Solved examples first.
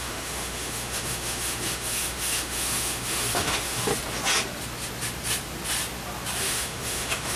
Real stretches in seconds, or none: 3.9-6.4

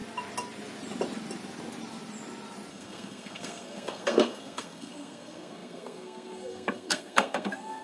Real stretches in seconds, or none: 0.0-2.7

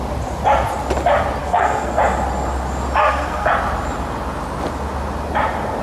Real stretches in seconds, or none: 0.0-1.4; 2.0-3.0; 3.5-5.8

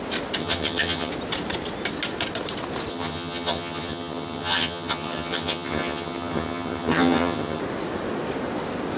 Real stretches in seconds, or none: 0.0-0.4; 1.1-2.9; 7.6-9.0

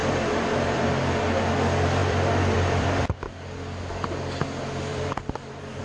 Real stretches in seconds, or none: 0.8-2.0; 3.1-4.9

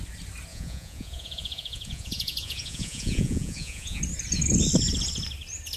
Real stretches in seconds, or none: 0.0-0.5; 4.0-5.8

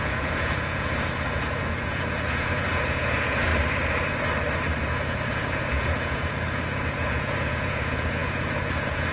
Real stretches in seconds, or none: 3.5-4.9